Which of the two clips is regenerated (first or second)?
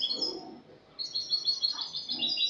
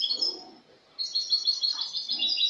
second